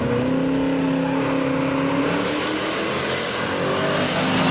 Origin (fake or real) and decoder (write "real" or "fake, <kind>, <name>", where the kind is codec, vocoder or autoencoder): real